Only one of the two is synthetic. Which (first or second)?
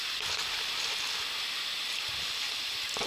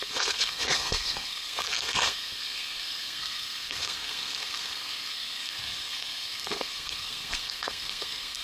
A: second